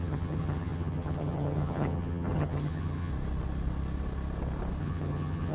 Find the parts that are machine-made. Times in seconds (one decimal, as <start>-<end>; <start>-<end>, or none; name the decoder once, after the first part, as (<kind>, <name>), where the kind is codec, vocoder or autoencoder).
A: 0.0-3.1 (vocoder, HiFi-GAN); 4.8-5.5